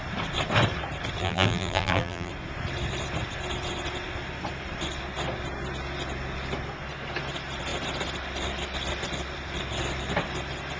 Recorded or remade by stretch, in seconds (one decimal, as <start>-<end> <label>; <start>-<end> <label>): 0.0-1.2 recorded; 1.2-2.3 remade; 2.3-10.8 recorded